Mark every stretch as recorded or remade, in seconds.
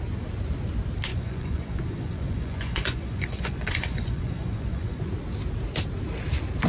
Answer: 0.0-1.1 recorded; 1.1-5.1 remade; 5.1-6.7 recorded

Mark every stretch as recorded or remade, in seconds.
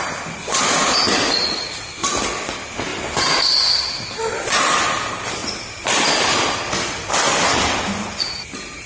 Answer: 0.0-8.9 recorded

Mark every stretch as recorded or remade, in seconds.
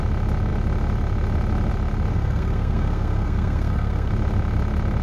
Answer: 0.0-2.1 recorded; 2.1-4.1 remade; 4.1-5.0 recorded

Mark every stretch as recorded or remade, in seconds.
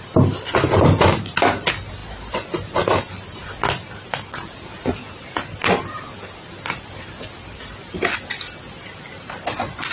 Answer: 0.0-9.9 recorded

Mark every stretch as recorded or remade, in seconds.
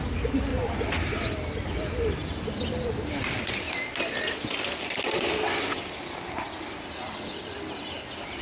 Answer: 0.0-8.4 recorded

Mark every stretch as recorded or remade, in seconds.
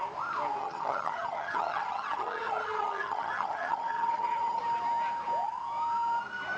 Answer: 0.0-0.6 recorded; 0.6-4.6 remade; 4.6-6.6 recorded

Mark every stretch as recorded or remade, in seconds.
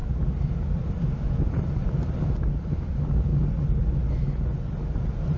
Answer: 0.0-3.3 remade; 3.3-5.0 recorded; 5.0-5.4 remade